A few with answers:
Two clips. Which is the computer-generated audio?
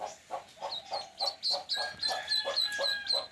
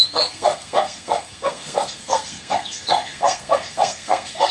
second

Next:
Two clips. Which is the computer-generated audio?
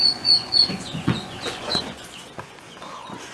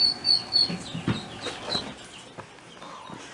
first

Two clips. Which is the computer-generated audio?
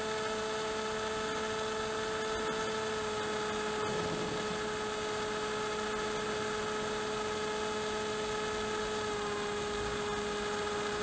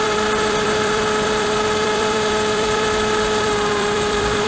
second